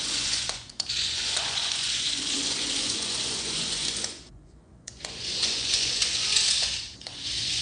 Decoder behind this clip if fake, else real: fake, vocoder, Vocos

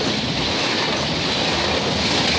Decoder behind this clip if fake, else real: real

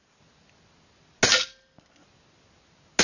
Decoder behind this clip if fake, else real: real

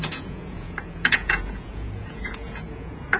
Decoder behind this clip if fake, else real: fake, vocoder, Vocos